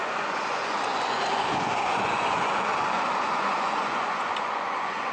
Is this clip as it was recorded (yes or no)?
no